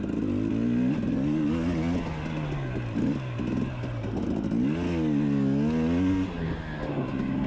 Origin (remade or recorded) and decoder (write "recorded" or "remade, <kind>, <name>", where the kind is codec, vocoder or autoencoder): recorded